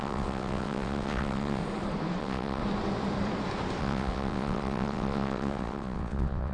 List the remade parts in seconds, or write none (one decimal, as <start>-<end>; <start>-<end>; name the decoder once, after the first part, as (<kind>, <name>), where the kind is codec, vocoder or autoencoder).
0.0-1.6 (vocoder, WaveNeXt); 2.2-2.6; 3.8-6.5